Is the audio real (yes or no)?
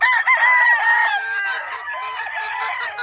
yes